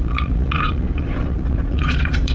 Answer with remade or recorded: remade